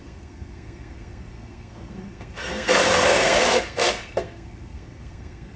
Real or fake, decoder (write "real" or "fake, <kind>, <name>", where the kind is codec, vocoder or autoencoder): fake, codec, SNAC